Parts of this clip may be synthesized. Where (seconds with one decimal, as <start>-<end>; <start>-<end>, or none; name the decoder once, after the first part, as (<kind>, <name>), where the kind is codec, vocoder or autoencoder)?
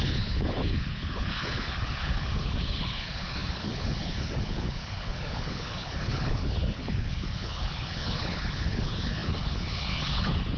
0.0-10.6 (codec, HILCodec)